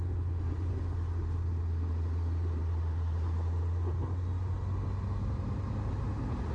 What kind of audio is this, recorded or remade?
recorded